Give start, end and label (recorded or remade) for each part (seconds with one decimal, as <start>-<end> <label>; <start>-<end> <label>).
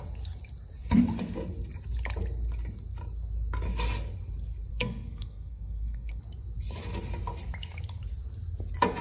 0.0-4.7 recorded; 4.7-6.2 remade; 6.2-9.0 recorded